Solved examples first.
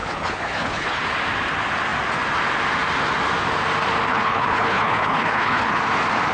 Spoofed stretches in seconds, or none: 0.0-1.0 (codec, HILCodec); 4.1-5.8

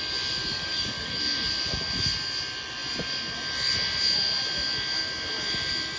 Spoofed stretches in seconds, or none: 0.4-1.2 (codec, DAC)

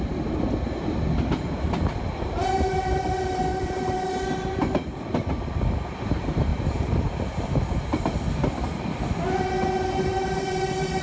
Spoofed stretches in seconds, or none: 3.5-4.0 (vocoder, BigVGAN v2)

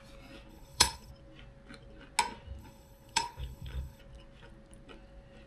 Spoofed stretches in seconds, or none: 0.5-1.1 (codec, HILCodec); 2.6-4.0

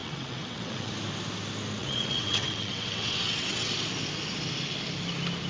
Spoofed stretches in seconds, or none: 0.0-0.9 (vocoder, WaveNeXt); 1.8-3.7